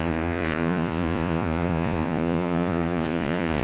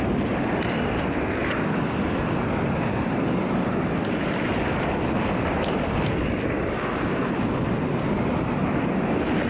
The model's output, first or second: first